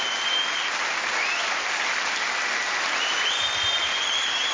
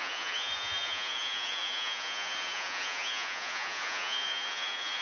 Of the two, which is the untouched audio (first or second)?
first